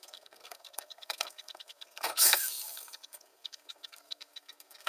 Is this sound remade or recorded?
remade